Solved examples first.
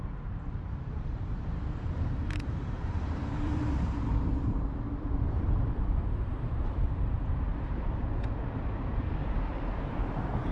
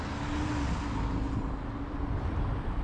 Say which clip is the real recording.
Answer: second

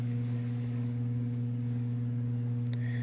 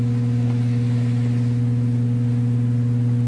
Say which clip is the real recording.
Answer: second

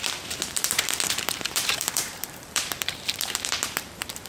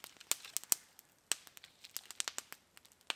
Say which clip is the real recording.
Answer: second